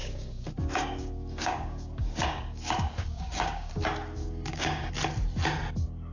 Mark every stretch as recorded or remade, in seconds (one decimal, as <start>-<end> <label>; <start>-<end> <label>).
0.0-3.7 remade; 3.7-4.2 recorded; 4.2-4.9 remade; 4.9-6.1 recorded